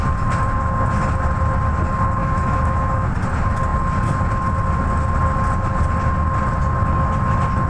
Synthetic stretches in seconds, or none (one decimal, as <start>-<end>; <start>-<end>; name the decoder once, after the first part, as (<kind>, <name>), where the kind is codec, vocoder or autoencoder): 2.2-3.1 (autoencoder, DAC-VAE)